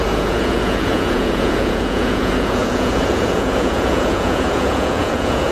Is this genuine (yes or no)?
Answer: no